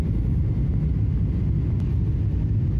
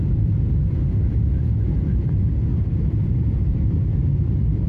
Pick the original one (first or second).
first